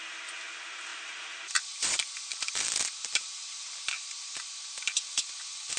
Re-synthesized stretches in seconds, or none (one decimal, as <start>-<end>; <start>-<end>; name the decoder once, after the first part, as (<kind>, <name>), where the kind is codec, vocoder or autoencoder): none